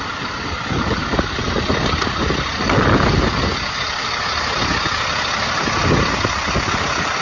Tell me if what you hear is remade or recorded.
recorded